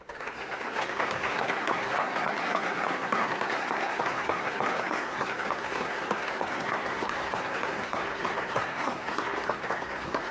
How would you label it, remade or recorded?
remade